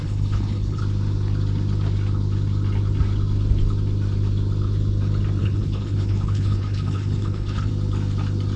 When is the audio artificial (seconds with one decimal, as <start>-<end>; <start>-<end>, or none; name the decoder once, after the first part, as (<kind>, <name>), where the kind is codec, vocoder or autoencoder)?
0.0-0.8 (codec, HILCodec); 5.4-7.7